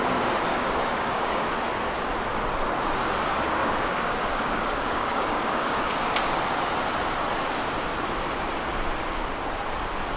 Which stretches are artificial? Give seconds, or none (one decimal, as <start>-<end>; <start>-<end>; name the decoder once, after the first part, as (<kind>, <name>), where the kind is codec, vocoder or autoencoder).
0.5-1.5 (codec, DAC); 3.6-5.9